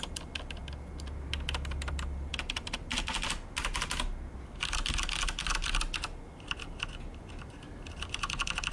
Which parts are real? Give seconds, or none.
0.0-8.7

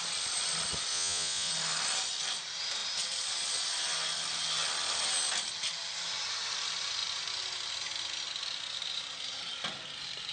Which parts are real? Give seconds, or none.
0.0-0.9; 1.5-10.3